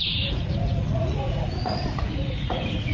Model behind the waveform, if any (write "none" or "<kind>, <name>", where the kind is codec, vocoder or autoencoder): vocoder, Vocos